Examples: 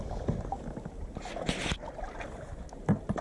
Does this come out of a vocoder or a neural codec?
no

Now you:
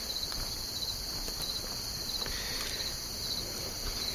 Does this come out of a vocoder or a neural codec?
no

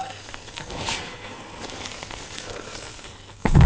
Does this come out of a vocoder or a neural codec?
yes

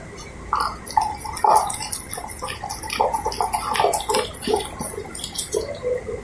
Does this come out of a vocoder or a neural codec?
no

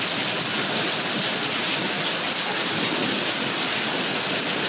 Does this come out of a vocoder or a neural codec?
no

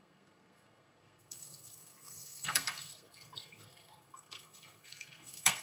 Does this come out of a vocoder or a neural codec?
yes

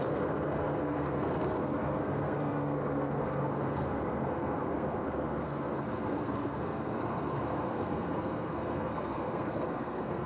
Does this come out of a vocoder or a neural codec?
yes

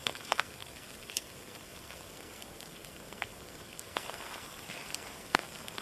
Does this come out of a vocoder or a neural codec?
yes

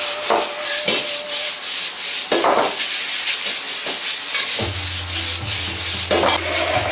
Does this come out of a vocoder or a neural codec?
no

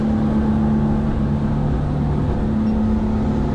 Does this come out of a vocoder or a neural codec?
no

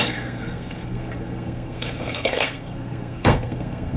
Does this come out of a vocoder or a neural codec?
yes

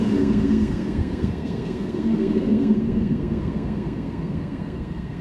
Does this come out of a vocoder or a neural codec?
yes